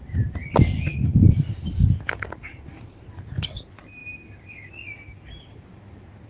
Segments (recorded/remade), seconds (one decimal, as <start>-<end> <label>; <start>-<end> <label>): 0.0-6.3 recorded